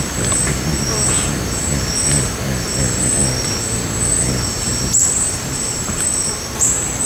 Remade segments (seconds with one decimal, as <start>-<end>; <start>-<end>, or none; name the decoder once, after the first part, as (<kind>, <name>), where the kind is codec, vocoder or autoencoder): 0.0-7.1 (vocoder, BigVGAN v2)